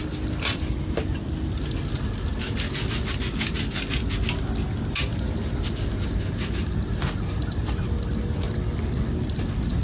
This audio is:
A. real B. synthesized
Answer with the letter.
A